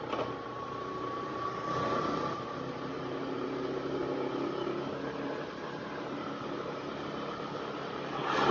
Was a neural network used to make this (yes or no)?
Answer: yes